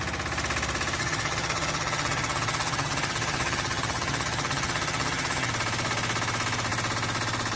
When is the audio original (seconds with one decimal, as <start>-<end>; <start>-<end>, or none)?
0.0-1.0; 5.5-7.6